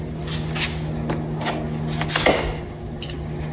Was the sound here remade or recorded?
recorded